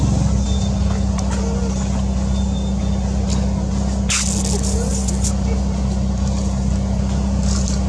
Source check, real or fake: real